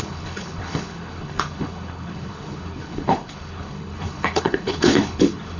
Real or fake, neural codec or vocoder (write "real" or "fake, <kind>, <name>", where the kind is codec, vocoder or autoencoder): fake, codec, HILCodec